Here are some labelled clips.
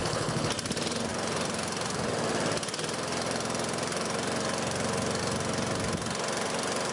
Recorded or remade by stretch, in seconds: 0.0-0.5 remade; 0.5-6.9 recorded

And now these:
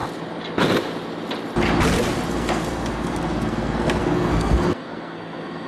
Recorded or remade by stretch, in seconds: 0.0-2.3 recorded; 2.3-5.7 remade

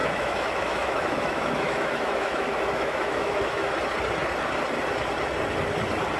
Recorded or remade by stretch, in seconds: 0.0-3.7 remade; 3.7-6.2 recorded

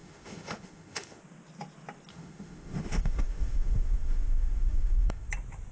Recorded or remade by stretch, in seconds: 0.0-1.2 remade; 1.2-2.1 recorded; 2.1-5.3 remade; 5.3-5.7 recorded

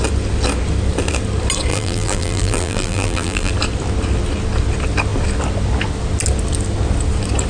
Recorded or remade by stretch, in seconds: 0.0-1.7 recorded; 1.7-3.5 remade; 3.5-7.5 recorded

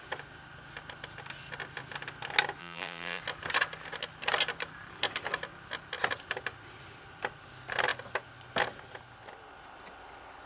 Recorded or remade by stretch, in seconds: 0.0-2.6 recorded; 2.6-3.2 remade; 3.2-10.5 recorded

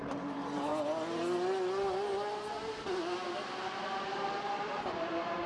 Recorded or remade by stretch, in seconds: 0.0-0.7 remade; 0.7-4.0 recorded; 4.0-5.5 remade